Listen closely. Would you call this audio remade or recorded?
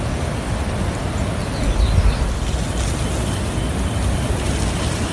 recorded